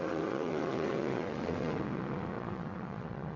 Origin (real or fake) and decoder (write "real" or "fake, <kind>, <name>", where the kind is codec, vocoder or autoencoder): fake, vocoder, WaveNeXt